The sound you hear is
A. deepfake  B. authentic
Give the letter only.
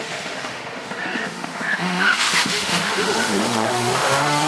A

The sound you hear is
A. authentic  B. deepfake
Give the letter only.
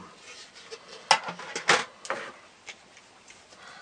A